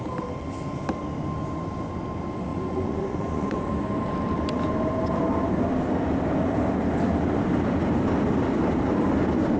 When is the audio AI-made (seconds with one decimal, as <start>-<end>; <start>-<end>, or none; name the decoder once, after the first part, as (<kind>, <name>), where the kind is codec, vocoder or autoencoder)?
2.5-3.7 (vocoder, Vocos)